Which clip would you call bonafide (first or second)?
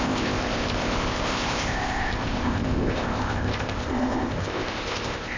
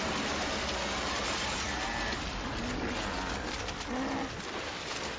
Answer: second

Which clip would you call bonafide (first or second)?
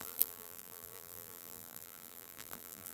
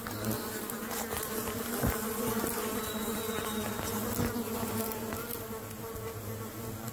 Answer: second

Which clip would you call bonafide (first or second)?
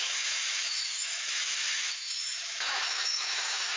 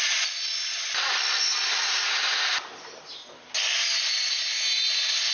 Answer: second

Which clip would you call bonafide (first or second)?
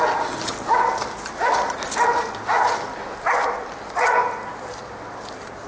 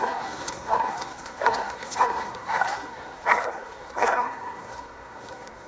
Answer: first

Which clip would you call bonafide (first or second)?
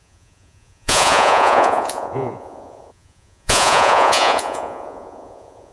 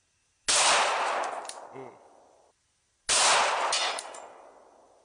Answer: second